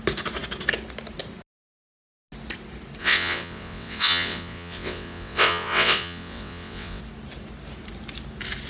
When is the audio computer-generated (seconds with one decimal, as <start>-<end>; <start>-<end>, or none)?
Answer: 3.0-7.0